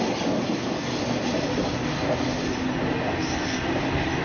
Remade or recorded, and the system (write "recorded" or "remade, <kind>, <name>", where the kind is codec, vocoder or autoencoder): recorded